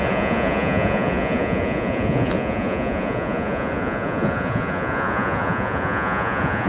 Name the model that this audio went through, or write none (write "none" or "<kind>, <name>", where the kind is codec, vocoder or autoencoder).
vocoder, Vocos